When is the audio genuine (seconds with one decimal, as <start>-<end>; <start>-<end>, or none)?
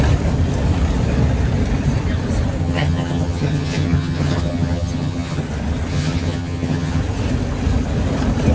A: 0.0-2.6; 5.4-5.9; 7.0-8.5